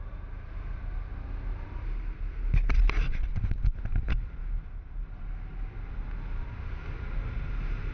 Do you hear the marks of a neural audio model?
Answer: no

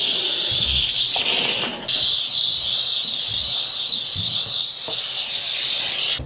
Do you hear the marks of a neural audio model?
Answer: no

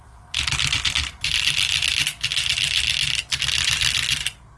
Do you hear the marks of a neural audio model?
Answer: no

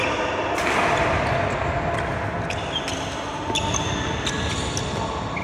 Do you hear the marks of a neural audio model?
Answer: no